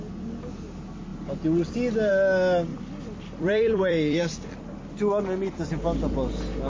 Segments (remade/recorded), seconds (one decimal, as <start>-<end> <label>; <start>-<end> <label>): 0.0-2.7 recorded; 2.7-4.6 remade; 4.6-6.7 recorded